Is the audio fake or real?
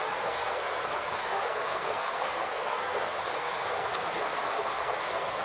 fake